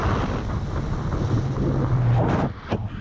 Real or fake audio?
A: real